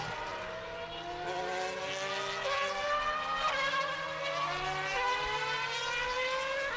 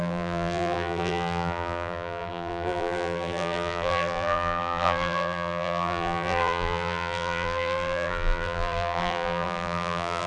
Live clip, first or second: first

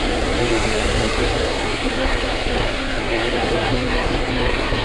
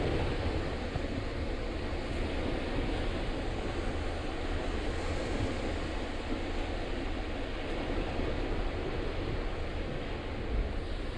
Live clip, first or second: second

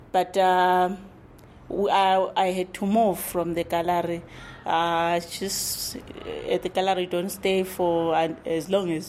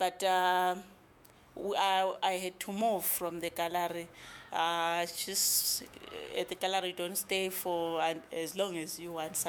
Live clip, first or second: first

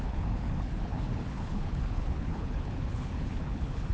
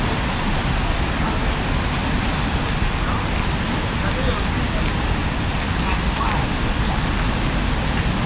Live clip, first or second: second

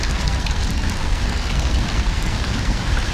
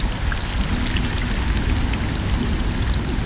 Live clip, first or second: second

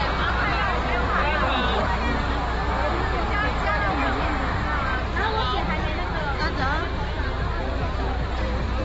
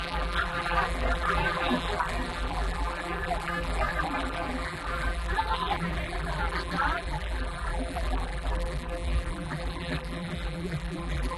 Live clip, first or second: first